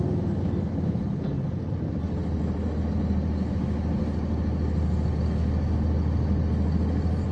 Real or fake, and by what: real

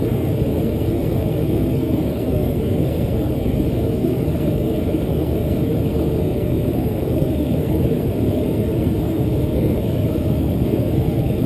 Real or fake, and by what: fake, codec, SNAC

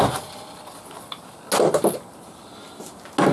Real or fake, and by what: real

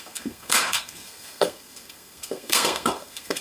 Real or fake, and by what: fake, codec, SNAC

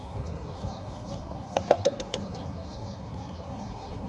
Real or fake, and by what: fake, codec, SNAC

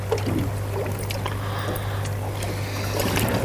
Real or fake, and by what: real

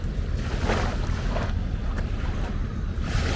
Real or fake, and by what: real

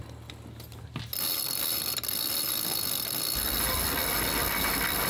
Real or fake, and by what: real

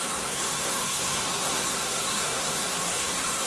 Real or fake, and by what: fake, codec, SNAC